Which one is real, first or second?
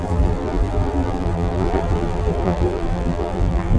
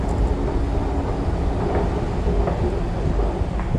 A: second